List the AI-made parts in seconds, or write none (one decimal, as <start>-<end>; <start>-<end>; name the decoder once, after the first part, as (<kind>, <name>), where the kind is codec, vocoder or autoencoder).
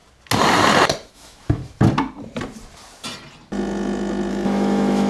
1.1-1.6 (autoencoder, DAC-VAE); 4.3-5.1